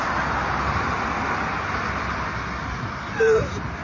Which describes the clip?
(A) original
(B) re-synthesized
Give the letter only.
A